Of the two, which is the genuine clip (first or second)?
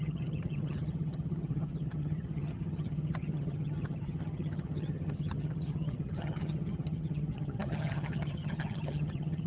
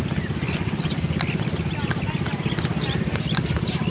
second